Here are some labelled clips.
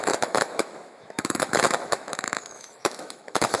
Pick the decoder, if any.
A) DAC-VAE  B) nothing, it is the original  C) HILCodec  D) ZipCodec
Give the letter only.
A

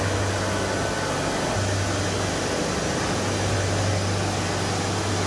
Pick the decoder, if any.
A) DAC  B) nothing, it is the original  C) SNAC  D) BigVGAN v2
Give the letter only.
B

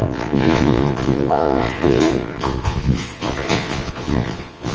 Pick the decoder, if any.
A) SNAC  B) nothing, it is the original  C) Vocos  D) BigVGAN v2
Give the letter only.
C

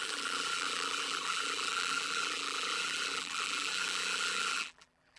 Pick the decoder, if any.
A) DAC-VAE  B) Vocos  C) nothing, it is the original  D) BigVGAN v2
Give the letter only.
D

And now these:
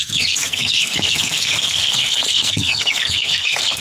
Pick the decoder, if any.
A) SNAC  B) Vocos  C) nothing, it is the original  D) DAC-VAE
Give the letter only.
A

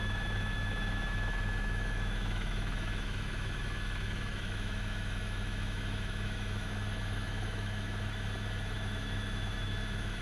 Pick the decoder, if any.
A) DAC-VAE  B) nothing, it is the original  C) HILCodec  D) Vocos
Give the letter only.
A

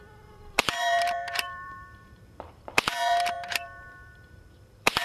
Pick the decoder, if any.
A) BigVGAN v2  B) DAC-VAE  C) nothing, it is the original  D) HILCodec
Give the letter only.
A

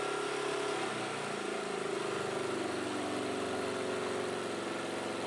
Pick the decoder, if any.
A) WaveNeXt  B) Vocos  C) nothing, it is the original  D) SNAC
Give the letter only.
C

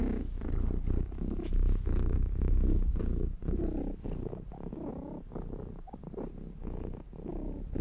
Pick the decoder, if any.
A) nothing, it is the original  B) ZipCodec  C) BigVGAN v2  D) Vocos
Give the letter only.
A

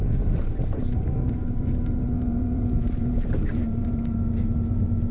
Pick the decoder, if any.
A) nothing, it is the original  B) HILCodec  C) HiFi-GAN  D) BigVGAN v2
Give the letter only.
D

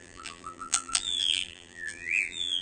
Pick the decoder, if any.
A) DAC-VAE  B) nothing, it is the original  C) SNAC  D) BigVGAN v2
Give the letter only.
D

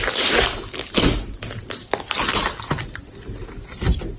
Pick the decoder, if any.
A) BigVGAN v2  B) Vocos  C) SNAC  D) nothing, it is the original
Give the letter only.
D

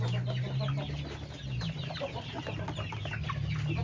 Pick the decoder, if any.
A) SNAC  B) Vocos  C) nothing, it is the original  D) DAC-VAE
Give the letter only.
C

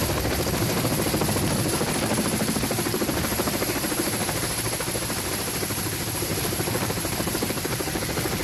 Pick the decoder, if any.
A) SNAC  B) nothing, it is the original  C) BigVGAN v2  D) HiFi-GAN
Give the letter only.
C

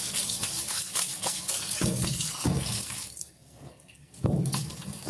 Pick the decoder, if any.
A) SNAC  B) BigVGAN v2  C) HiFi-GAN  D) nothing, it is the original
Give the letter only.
A